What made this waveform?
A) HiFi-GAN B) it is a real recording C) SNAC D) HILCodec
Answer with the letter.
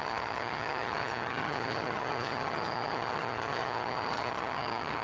A